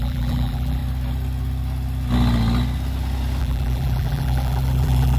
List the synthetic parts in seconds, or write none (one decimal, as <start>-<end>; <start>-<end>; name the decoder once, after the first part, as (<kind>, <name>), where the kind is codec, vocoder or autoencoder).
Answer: 0.0-0.8 (vocoder, BigVGAN v2); 3.4-5.2